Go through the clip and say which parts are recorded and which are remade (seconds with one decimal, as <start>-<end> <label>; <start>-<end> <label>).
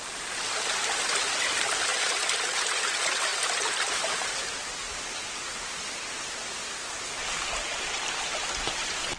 0.0-9.2 recorded